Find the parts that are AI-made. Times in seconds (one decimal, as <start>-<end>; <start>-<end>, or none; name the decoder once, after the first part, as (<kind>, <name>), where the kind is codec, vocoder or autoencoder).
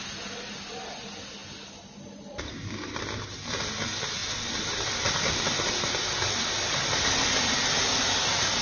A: 4.2-6.4 (vocoder, BigVGAN v2)